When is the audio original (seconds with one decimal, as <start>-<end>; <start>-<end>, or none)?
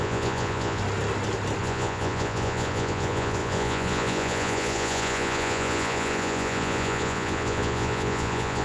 0.8-1.6